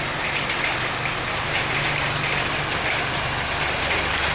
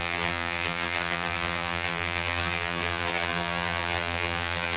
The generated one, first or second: second